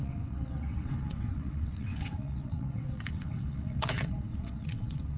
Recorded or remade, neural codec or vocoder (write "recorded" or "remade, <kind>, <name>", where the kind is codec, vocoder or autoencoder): remade, vocoder, WaveNeXt